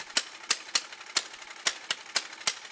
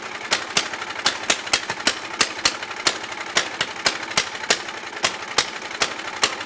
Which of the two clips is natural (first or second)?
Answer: second